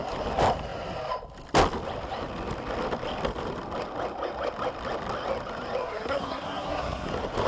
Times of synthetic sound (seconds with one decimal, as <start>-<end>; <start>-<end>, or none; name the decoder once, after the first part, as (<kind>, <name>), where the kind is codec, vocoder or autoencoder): 5.8-7.1 (codec, SNAC)